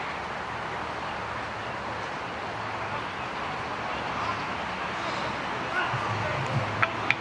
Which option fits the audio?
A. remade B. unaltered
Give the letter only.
B